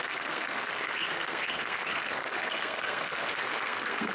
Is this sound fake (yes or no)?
yes